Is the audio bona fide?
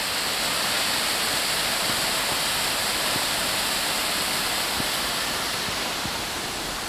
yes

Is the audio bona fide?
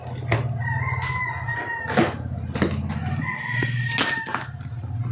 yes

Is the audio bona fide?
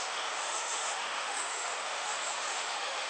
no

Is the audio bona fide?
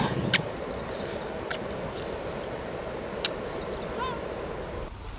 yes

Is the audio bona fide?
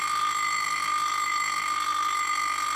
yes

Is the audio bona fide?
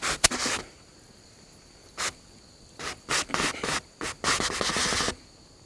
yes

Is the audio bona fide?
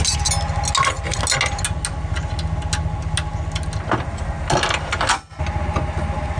yes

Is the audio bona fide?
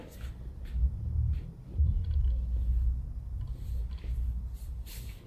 yes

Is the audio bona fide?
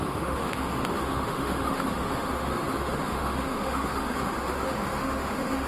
no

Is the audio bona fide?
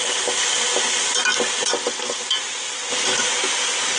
yes